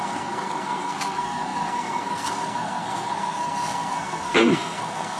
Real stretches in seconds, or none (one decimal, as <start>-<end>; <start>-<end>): none